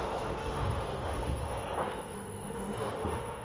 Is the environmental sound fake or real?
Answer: fake